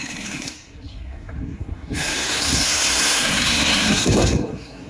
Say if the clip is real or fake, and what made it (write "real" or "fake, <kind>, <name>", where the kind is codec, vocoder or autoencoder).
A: fake, codec, SNAC